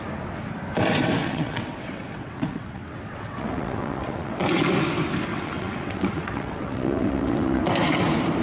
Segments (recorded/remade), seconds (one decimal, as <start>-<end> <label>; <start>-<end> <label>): 0.0-1.2 recorded; 1.2-4.6 remade; 4.6-5.3 recorded; 5.3-7.6 remade; 7.6-8.4 recorded